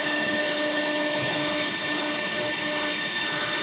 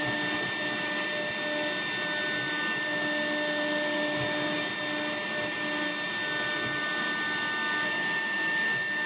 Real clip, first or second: second